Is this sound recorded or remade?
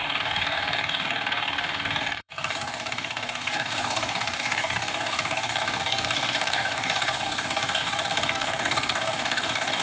remade